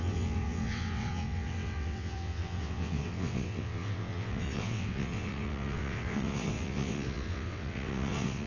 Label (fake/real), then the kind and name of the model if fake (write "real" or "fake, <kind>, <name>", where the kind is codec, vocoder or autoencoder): fake, vocoder, WaveNeXt